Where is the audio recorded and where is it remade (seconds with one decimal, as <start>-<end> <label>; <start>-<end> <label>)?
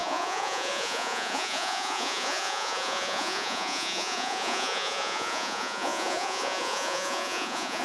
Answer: 0.0-7.8 remade